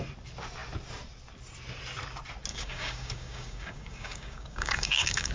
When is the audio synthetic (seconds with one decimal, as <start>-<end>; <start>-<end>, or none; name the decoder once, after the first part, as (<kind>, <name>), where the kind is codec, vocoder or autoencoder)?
2.5-5.3 (codec, DAC)